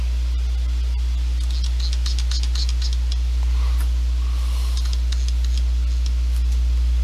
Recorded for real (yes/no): yes